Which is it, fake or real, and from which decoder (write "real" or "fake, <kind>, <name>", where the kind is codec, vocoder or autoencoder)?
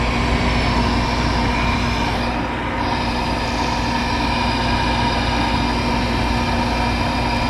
real